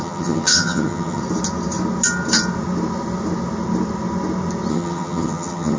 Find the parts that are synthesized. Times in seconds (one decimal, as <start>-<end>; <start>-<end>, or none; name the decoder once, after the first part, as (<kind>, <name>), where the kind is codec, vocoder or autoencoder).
0.0-1.2 (vocoder, HiFi-GAN); 4.7-5.8